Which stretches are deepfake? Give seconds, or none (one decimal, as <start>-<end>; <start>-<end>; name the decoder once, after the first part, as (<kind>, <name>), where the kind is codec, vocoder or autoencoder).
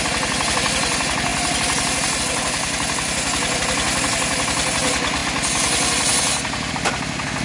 none